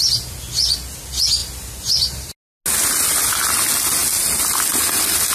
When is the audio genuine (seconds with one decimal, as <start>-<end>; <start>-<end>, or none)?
0.0-5.3

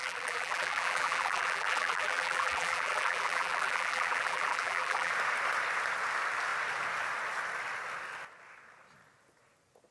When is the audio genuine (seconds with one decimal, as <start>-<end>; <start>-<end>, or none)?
5.1-9.9

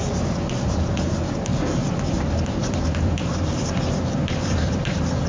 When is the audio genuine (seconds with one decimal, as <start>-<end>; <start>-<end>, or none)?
1.5-2.1

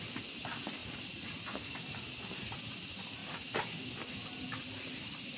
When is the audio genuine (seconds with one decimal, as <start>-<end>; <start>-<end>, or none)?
3.2-5.0

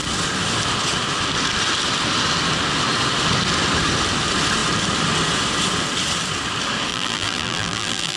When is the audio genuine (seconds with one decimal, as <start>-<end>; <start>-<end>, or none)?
0.0-6.9

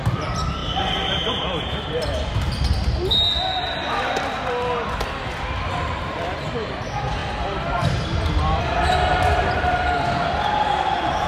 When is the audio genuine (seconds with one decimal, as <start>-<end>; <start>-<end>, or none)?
0.6-1.3; 7.2-8.6

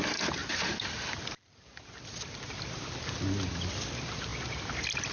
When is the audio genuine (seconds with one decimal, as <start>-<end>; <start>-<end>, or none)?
0.0-4.3